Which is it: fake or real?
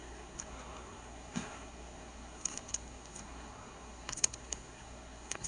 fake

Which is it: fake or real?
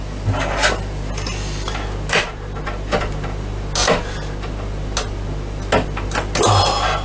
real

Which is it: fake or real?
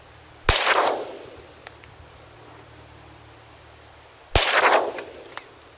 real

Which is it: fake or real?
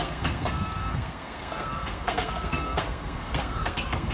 fake